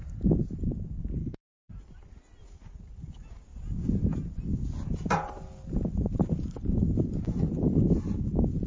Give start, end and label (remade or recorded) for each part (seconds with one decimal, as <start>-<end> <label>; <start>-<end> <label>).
0.0-1.2 recorded; 1.2-1.7 remade; 1.7-8.7 recorded

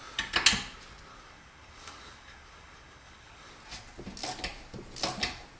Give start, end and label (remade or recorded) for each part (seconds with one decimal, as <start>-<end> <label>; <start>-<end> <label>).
0.0-1.1 recorded; 1.1-3.5 remade; 3.5-5.6 recorded

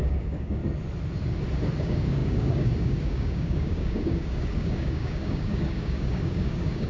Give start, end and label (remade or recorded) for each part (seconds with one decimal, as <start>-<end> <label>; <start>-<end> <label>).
0.0-0.6 remade; 0.6-1.8 recorded; 1.8-6.9 remade

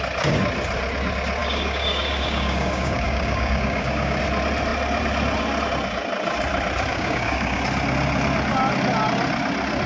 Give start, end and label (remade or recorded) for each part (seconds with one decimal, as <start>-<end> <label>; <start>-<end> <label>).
0.0-1.4 recorded; 1.4-4.2 remade; 4.2-6.9 recorded; 6.9-7.6 remade; 7.6-9.9 recorded

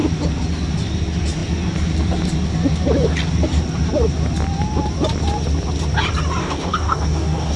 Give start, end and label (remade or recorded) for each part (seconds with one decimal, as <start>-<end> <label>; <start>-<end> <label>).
0.0-6.4 recorded; 6.4-7.6 remade